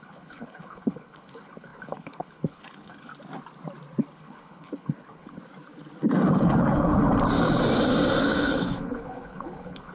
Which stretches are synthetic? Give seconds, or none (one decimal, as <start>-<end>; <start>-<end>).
0.0-3.1; 4.1-5.4; 6.3-6.9; 8.2-9.9